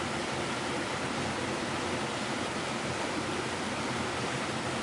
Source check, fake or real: real